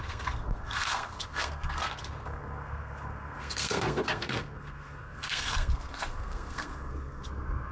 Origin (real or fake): fake